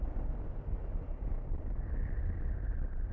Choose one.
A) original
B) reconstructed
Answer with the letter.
A